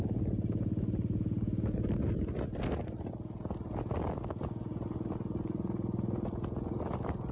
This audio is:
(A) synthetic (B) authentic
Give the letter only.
B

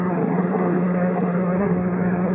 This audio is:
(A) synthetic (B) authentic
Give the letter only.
A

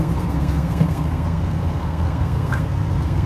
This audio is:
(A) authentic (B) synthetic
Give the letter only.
B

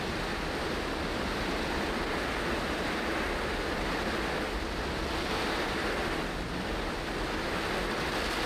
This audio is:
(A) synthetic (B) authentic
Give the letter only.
B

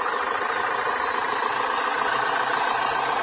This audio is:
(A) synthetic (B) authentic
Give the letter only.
B